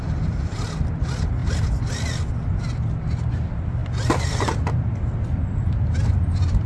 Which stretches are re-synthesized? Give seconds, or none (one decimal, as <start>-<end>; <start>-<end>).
none